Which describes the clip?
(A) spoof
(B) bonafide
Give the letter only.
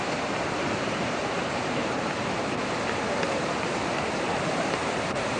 A